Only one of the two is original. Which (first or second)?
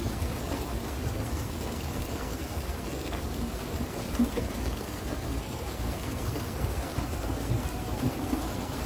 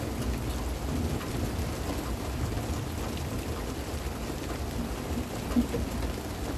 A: second